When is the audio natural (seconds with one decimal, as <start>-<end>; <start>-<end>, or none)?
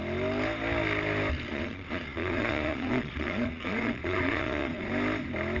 0.0-1.5; 4.9-5.6